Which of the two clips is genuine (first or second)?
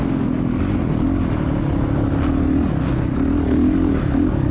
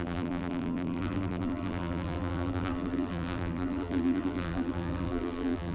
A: first